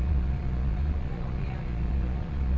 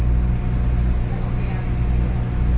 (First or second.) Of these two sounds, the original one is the second